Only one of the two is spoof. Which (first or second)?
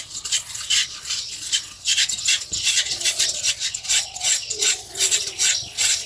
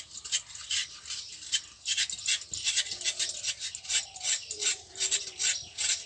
first